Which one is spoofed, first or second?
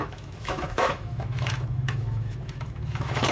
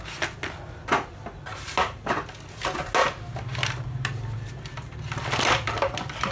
first